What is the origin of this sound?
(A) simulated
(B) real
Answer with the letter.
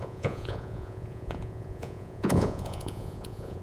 A